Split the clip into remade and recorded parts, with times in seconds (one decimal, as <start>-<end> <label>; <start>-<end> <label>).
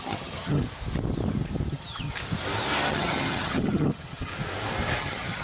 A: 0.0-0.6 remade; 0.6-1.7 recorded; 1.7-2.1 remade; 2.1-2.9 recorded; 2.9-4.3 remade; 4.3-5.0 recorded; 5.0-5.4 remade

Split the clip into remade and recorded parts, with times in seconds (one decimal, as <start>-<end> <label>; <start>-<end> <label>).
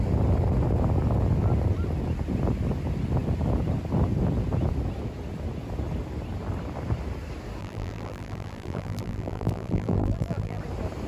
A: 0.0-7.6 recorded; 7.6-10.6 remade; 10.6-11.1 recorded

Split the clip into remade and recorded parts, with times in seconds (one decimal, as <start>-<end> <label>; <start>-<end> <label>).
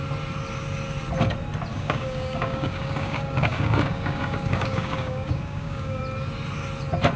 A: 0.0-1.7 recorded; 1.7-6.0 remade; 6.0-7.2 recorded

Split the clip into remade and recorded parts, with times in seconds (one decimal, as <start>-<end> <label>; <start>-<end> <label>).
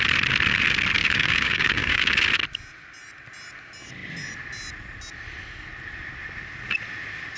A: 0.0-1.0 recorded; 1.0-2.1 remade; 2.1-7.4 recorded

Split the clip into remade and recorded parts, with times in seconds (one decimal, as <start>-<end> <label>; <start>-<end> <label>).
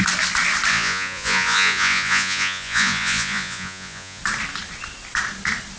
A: 0.0-0.7 recorded; 0.7-4.2 remade; 4.2-5.8 recorded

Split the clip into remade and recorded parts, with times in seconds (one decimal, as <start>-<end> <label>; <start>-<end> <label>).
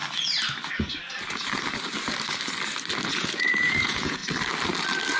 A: 0.0-3.1 recorded; 3.1-4.2 remade; 4.2-5.2 recorded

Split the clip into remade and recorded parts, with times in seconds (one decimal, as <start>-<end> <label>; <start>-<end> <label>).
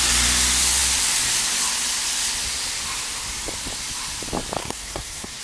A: 0.0-4.6 recorded; 4.6-5.4 remade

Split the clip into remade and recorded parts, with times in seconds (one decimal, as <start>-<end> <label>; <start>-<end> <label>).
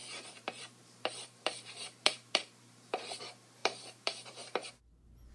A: 0.0-3.2 remade; 3.2-3.6 recorded; 3.6-4.7 remade; 4.7-5.3 recorded